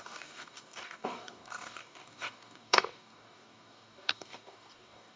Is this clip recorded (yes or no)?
no